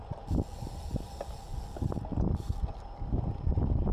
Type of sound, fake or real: real